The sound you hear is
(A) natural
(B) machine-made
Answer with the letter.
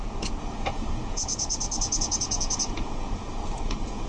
B